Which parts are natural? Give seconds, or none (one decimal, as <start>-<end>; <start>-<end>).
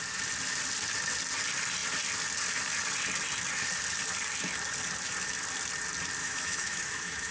0.0-6.2